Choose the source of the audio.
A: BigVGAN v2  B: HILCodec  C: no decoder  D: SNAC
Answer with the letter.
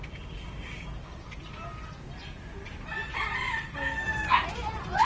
C